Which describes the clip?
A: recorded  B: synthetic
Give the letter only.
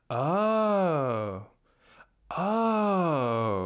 A